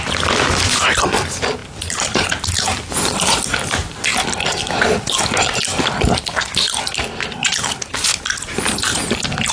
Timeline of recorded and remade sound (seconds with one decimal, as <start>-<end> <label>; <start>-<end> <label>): 0.0-9.5 recorded